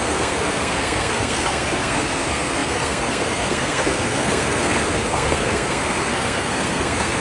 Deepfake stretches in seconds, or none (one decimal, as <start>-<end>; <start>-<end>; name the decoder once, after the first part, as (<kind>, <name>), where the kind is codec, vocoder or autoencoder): 0.0-7.2 (codec, SNAC)